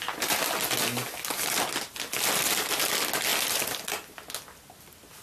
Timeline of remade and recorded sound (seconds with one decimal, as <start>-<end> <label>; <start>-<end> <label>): 0.0-5.2 recorded